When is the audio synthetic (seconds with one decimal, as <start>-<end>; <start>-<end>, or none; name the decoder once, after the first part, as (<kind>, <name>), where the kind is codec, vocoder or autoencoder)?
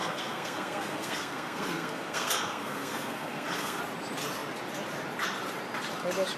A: 0.0-3.8 (codec, SNAC)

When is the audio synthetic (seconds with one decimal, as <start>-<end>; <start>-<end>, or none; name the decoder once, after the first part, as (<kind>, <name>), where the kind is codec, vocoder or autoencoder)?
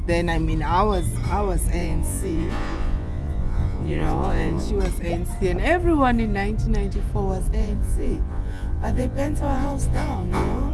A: 1.8-4.7 (vocoder, Vocos); 7.6-10.7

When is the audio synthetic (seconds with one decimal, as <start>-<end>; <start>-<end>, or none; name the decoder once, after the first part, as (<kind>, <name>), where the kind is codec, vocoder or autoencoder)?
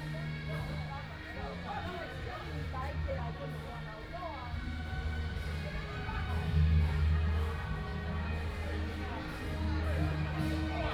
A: 2.6-3.3 (vocoder, BigVGAN v2)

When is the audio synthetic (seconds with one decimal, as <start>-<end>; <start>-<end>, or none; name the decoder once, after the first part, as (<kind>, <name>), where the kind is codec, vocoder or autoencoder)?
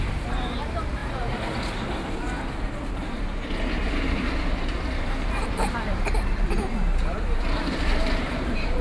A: 0.0-8.8 (vocoder, BigVGAN v2)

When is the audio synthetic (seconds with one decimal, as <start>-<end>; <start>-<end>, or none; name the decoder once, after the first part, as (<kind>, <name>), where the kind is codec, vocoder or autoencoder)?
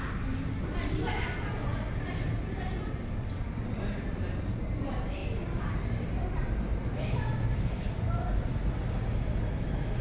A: none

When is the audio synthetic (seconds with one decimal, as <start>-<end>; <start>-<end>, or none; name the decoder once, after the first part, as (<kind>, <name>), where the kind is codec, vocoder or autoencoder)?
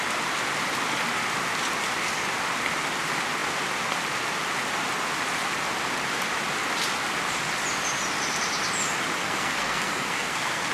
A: 9.2-10.7 (codec, SNAC)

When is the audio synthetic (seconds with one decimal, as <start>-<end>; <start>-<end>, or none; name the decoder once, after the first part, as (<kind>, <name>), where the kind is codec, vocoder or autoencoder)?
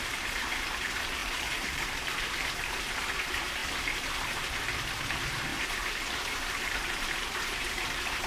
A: 0.0-3.6 (vocoder, BigVGAN v2); 5.1-8.3